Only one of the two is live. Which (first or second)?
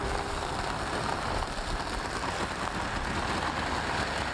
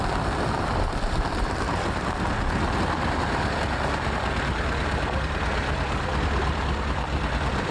first